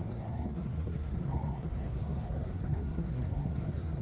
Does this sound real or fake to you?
fake